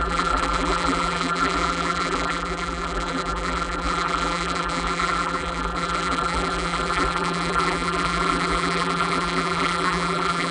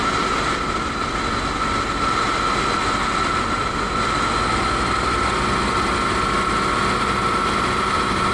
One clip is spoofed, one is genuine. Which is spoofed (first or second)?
first